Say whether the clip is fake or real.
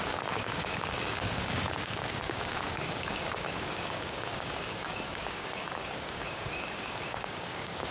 fake